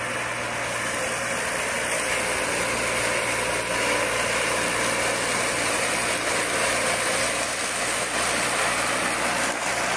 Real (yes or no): yes